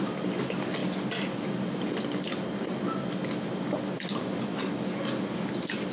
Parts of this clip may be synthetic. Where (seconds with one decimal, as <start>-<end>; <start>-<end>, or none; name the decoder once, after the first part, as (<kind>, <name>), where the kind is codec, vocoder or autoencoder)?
none